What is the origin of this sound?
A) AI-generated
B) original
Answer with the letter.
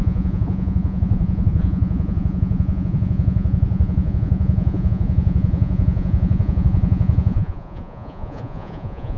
A